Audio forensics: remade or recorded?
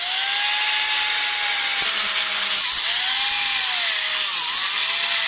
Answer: recorded